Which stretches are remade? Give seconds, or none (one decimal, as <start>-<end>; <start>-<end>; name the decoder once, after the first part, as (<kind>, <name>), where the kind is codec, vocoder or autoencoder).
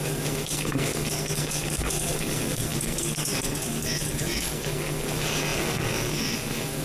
0.0-6.8 (codec, SNAC)